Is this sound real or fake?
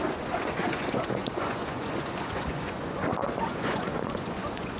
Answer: fake